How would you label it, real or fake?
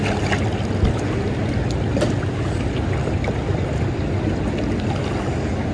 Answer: real